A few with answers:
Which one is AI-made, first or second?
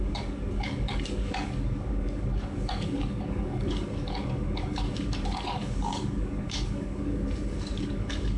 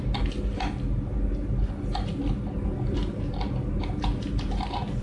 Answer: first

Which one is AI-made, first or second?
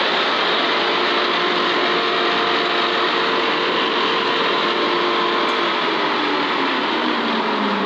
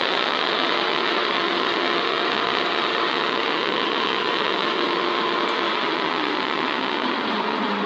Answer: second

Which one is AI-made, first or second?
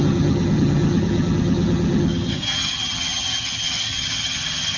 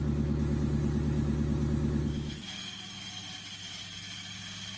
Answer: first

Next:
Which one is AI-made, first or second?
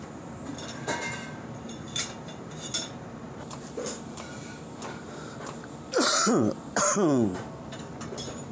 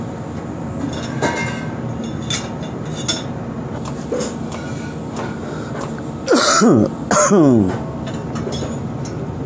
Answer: first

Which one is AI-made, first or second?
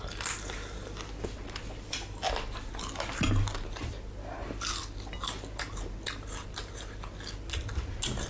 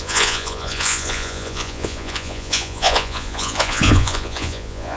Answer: second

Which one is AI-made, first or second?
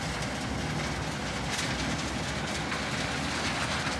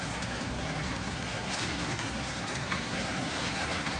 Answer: second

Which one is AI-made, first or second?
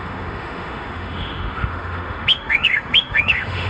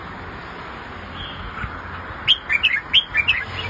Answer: first